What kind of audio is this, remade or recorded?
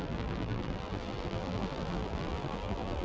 remade